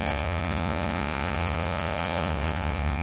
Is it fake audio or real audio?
fake